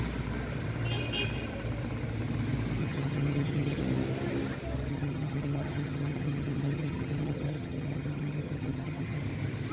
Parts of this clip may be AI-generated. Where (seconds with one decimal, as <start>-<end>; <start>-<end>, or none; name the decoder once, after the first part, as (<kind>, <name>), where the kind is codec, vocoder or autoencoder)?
2.8-3.8 (vocoder, HiFi-GAN); 4.9-9.2